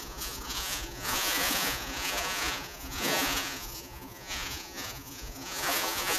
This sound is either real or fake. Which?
fake